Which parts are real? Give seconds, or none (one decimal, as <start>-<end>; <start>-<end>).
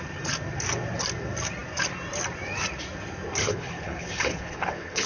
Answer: 0.0-3.4